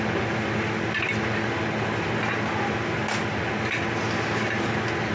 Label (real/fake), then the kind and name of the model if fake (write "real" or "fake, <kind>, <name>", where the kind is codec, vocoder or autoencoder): real